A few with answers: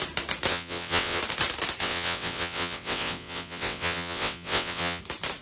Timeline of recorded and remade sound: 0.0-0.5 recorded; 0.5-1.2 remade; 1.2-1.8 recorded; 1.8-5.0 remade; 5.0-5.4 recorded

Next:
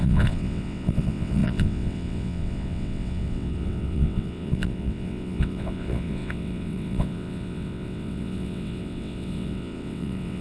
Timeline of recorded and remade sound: 0.0-10.4 remade

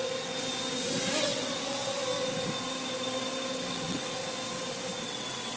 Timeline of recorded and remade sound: 0.0-1.2 recorded; 1.2-1.9 remade; 1.9-3.7 recorded; 3.7-4.2 remade; 4.2-5.0 recorded; 5.0-5.6 remade

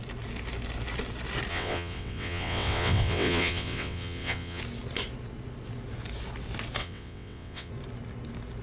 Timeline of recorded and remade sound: 0.0-1.5 recorded; 1.5-4.6 remade; 4.6-6.8 recorded; 6.8-7.7 remade; 7.7-8.6 recorded

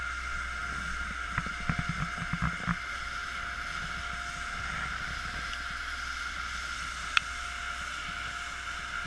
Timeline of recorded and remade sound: 0.0-9.1 recorded

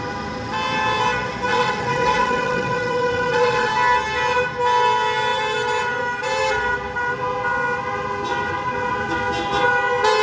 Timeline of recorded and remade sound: 0.0-1.5 recorded; 1.5-3.7 remade; 3.7-10.2 recorded

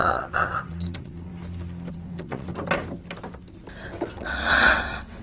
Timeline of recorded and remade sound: 0.0-1.3 remade; 1.3-1.9 recorded; 1.9-2.5 remade; 2.5-3.8 recorded; 3.8-5.2 remade